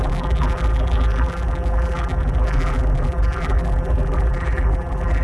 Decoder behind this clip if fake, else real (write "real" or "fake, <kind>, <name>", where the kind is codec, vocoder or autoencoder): fake, vocoder, BigVGAN v2